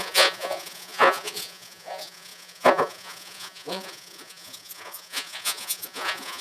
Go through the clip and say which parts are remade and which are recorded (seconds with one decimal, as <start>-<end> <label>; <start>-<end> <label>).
0.0-6.4 remade